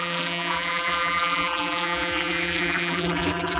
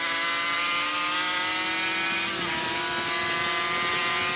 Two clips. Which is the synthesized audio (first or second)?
first